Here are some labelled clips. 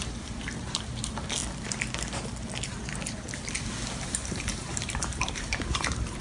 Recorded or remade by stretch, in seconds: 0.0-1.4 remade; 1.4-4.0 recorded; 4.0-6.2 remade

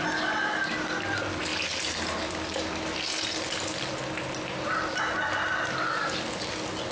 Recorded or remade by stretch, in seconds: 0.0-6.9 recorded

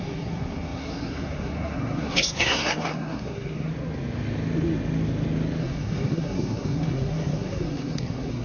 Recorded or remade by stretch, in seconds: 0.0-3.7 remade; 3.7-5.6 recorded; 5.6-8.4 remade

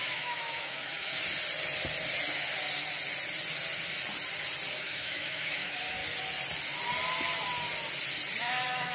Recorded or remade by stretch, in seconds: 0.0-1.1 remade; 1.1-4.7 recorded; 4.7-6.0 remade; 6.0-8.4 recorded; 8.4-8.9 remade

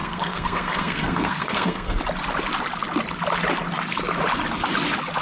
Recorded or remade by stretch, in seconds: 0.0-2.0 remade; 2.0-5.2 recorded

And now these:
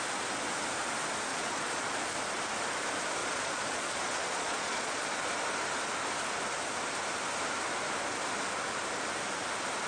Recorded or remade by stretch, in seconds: 0.0-1.3 recorded; 1.3-2.0 remade; 2.0-3.2 recorded; 3.2-5.1 remade; 5.1-9.9 recorded

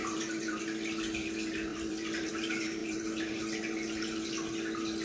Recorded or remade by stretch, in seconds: 0.0-0.6 remade; 0.6-1.7 recorded; 1.7-2.3 remade; 2.3-2.8 recorded; 2.8-3.4 remade; 3.4-5.0 recorded

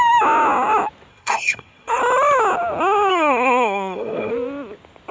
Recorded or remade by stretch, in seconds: 0.0-1.1 recorded; 1.1-2.0 remade; 2.0-3.1 recorded; 3.1-4.3 remade; 4.3-5.1 recorded